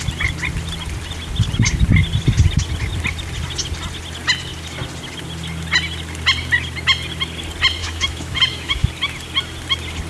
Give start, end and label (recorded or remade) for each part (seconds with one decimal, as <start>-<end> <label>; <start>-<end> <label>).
0.0-7.8 recorded; 7.8-8.9 remade; 8.9-10.1 recorded